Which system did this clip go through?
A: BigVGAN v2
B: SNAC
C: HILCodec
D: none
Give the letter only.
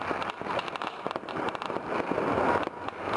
D